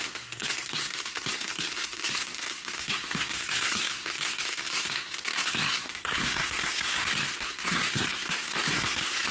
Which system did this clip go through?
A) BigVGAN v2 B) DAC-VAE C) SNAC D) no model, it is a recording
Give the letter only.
C